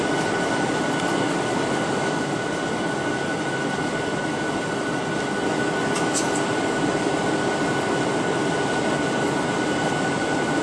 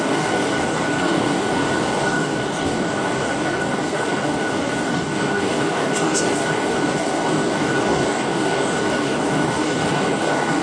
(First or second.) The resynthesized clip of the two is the second